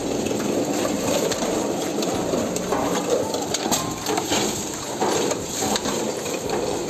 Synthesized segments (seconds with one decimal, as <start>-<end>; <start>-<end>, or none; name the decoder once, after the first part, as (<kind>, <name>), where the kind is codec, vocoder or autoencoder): 1.1-6.9 (vocoder, BigVGAN v2)

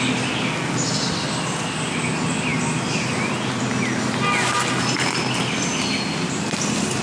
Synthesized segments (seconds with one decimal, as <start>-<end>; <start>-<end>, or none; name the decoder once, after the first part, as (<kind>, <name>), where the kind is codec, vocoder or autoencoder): none

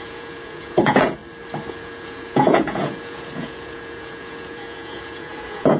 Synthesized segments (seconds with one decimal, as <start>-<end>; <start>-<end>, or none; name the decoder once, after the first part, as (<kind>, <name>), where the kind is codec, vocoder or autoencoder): 0.0-1.2 (vocoder, Vocos); 1.7-5.8

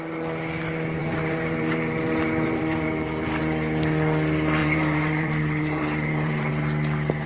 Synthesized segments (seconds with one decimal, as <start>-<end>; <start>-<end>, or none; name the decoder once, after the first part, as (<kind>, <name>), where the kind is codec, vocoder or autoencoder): 1.0-3.4 (vocoder, BigVGAN v2); 4.6-6.5

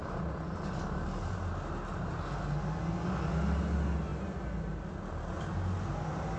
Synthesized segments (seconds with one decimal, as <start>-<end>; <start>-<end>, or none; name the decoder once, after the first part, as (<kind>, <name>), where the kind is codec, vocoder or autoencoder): none

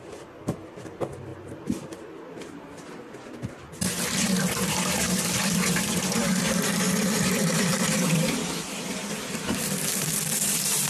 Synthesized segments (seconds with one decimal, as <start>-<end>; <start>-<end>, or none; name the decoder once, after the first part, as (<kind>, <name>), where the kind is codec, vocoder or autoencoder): 0.0-1.3 (vocoder, BigVGAN v2); 3.9-6.3; 7.1-10.9